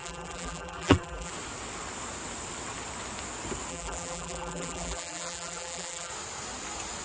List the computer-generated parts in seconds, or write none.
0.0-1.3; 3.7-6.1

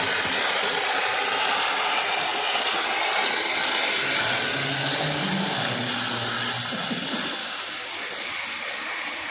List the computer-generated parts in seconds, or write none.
7.4-7.9

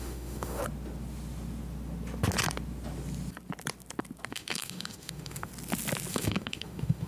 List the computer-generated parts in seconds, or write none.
0.0-0.6; 4.3-5.5; 6.1-7.1